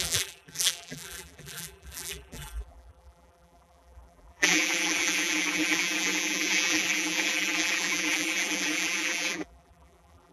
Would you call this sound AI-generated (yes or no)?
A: yes